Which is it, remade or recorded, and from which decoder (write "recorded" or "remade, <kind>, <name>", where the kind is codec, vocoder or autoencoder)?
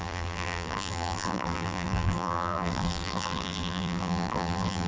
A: remade, vocoder, BigVGAN v2